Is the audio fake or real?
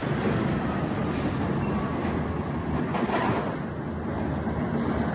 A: real